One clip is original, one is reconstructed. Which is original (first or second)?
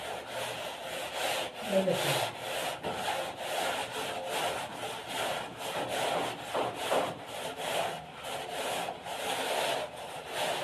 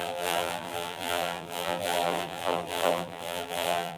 first